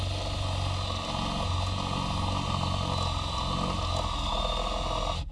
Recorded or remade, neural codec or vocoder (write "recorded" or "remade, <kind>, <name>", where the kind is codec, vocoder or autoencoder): recorded